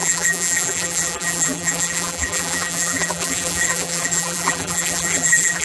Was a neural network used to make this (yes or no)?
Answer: yes